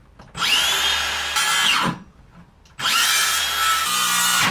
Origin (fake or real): real